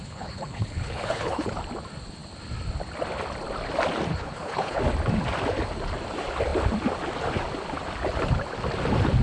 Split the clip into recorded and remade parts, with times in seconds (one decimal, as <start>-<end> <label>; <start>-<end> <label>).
0.0-1.5 remade; 1.5-4.1 recorded; 4.1-4.8 remade; 4.8-9.2 recorded